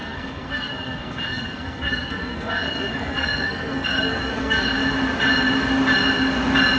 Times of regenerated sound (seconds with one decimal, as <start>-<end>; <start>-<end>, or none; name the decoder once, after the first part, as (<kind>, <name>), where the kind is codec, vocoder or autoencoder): 0.0-4.8 (codec, SNAC)